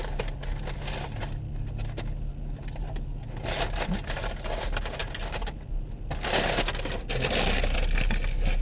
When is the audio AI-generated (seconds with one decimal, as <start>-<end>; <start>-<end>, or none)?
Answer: none